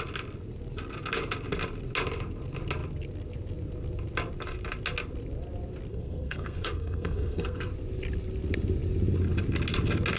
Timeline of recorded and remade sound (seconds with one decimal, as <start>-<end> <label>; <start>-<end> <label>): 0.0-5.9 recorded; 5.9-7.7 remade; 7.7-10.2 recorded